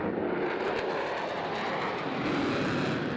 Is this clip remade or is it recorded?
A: recorded